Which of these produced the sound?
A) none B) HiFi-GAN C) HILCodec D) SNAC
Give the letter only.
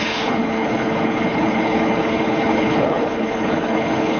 C